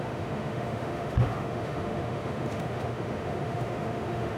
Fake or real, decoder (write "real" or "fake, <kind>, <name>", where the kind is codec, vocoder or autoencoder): fake, autoencoder, DAC-VAE